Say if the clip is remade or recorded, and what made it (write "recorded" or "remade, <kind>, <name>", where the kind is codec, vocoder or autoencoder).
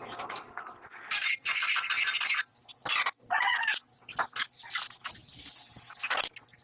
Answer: recorded